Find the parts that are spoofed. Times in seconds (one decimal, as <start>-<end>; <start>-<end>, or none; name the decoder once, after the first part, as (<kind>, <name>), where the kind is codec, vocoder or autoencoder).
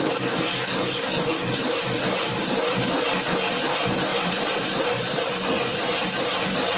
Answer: 1.3-2.8 (vocoder, BigVGAN v2); 4.1-5.3